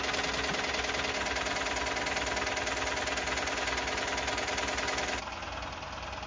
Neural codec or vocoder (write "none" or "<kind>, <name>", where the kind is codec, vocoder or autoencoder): none